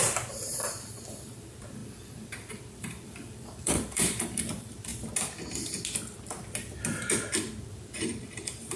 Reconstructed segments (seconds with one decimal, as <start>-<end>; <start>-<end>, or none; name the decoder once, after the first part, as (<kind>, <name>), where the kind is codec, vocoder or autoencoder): 0.0-4.9 (vocoder, BigVGAN v2); 7.6-8.8